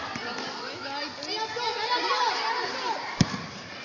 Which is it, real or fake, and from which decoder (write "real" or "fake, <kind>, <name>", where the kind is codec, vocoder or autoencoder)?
real